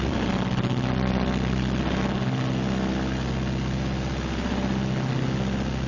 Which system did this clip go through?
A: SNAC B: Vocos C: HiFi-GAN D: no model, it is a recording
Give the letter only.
D